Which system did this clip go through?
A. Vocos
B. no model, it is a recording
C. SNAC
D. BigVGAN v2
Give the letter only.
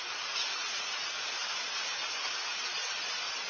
B